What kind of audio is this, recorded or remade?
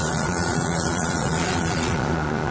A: remade